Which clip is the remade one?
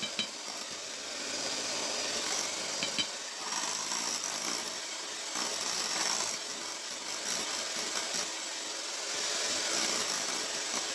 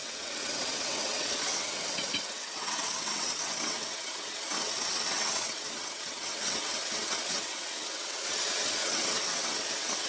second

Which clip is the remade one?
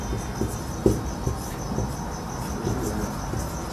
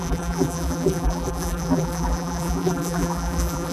second